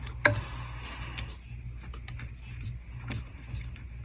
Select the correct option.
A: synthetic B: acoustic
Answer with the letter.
B